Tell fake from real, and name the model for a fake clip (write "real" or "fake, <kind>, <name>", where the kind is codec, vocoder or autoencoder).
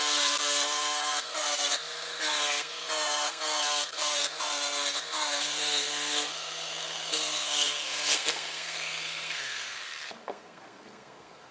fake, codec, SNAC